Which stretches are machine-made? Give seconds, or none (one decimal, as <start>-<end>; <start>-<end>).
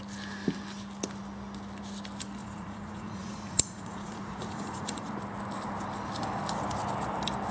2.4-5.1